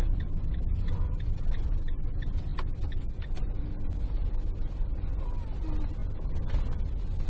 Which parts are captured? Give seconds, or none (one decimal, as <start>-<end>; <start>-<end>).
1.1-2.5; 3.4-7.3